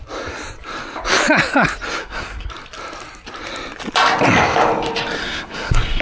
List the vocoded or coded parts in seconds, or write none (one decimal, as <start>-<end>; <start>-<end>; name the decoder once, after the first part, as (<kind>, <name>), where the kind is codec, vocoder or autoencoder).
2.0-2.5 (codec, SNAC); 5.2-6.0